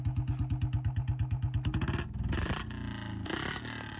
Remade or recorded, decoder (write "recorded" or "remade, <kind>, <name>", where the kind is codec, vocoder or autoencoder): recorded